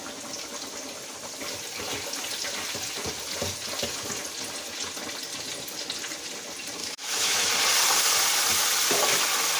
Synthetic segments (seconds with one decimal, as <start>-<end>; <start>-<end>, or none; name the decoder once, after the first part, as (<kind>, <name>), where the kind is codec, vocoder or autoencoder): 6.8-7.5 (autoencoder, DAC-VAE)